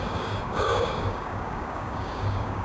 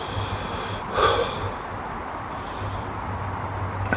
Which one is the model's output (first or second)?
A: first